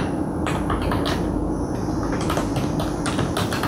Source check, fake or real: real